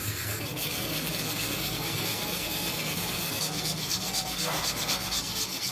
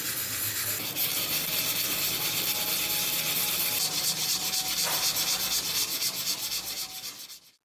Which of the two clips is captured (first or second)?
second